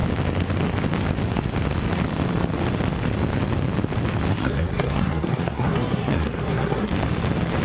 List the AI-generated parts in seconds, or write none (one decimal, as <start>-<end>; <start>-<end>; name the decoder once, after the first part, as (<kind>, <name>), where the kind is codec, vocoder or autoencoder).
4.3-6.9 (codec, SNAC)